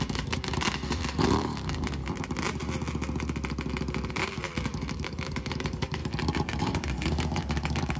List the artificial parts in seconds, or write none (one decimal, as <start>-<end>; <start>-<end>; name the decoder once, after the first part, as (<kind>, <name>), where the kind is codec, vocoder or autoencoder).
0.0-2.0 (codec, DAC); 4.1-6.0; 6.6-8.0

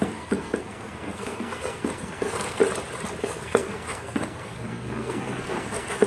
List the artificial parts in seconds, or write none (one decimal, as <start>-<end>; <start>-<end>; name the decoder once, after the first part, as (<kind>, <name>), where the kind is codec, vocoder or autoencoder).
0.0-2.6 (codec, SNAC); 3.2-6.1